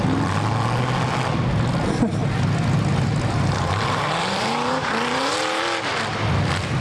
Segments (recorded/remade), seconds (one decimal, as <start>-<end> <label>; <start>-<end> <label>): 0.0-2.2 recorded; 2.2-5.6 remade; 5.6-6.8 recorded